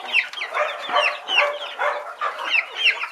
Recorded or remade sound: recorded